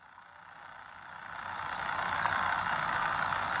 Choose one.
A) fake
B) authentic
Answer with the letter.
A